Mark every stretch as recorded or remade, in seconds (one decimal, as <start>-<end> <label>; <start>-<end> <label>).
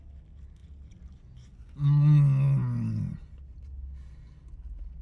0.0-5.0 recorded